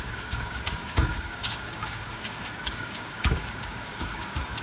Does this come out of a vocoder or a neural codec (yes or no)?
yes